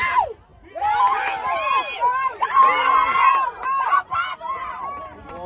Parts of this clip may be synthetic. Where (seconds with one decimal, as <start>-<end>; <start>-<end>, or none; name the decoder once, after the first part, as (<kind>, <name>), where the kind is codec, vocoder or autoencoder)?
none